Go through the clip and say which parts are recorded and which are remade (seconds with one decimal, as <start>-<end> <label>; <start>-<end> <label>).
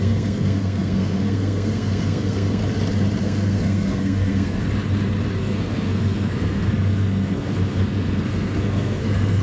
0.0-2.6 remade; 2.6-3.2 recorded; 3.2-4.6 remade; 4.6-5.4 recorded; 5.4-9.4 remade